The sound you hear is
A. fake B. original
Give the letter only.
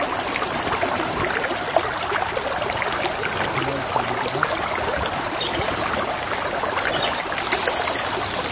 B